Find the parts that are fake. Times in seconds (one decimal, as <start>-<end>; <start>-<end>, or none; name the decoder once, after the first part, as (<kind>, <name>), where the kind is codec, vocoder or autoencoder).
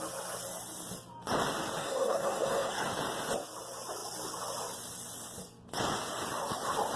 1.8-2.9 (codec, SNAC)